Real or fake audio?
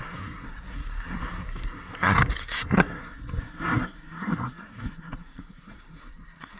fake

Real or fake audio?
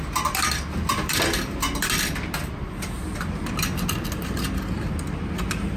real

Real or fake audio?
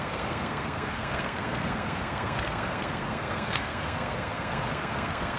fake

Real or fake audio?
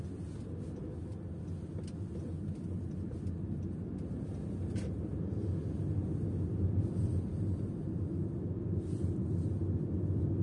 real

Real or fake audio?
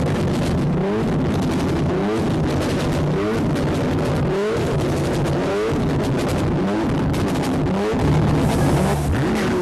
real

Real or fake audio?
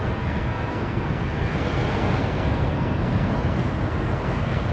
fake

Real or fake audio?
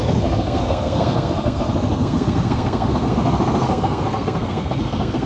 fake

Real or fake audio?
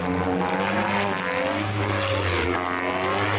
real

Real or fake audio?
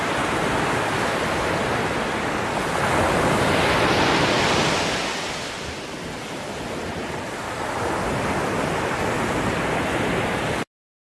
real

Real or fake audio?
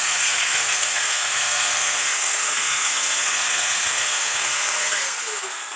fake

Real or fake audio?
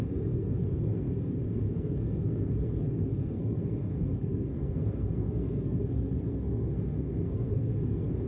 fake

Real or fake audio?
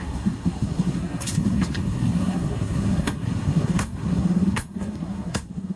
fake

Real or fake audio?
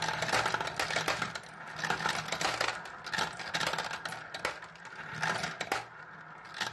real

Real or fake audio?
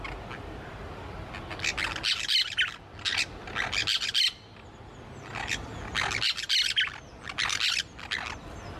real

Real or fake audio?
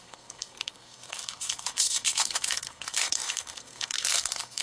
fake